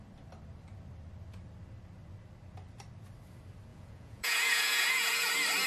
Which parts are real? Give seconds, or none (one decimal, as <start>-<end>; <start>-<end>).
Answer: 0.0-3.7; 5.3-5.7